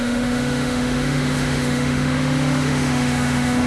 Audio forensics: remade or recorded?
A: remade